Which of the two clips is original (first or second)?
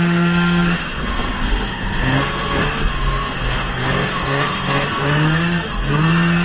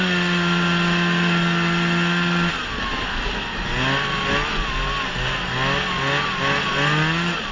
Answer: second